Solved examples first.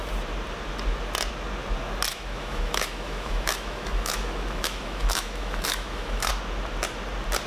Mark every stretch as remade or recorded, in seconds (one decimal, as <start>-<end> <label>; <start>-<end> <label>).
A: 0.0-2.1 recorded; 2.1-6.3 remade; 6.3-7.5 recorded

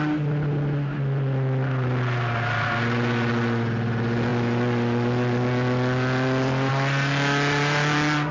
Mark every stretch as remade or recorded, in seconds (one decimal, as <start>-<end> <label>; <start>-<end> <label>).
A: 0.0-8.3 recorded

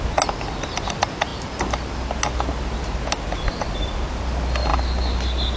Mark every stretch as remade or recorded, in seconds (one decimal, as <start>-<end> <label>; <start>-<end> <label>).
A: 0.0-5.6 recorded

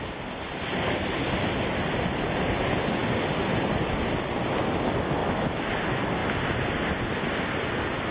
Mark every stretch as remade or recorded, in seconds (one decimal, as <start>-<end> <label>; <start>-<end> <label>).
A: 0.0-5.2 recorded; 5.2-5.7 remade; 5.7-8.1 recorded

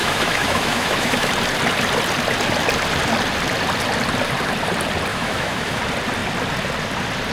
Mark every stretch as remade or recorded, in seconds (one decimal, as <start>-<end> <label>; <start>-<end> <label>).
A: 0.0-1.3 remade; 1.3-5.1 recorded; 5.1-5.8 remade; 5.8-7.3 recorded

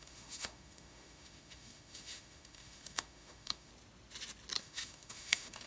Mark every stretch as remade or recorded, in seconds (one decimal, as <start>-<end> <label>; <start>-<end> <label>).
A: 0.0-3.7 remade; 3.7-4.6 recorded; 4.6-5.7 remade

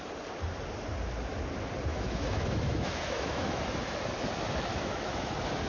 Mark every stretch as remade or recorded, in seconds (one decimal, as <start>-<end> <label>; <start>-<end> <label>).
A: 0.0-1.9 recorded; 1.9-3.6 remade; 3.6-4.7 recorded; 4.7-5.3 remade; 5.3-5.7 recorded